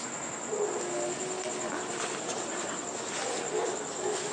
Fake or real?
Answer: real